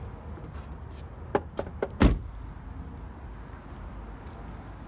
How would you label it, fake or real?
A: real